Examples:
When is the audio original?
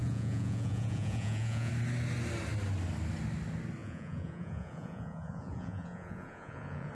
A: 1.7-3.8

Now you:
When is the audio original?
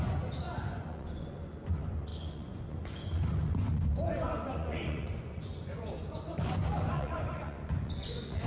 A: none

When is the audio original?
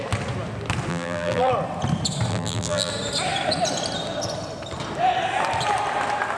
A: 0.0-0.9; 1.5-2.3; 2.9-6.4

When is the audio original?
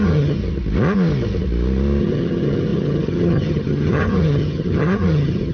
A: 0.4-2.0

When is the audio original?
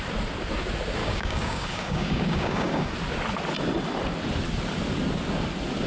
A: 0.0-1.0; 2.9-5.9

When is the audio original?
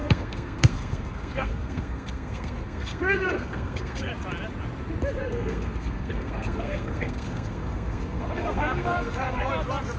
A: 4.1-5.2; 9.5-10.0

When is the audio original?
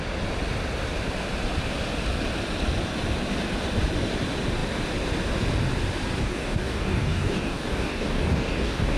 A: 0.0-6.2